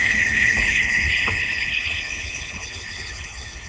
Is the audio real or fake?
fake